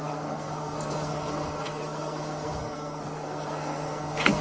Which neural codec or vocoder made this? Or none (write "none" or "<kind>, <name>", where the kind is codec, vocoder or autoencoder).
codec, SNAC